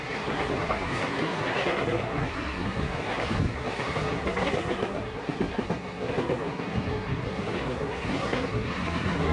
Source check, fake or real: fake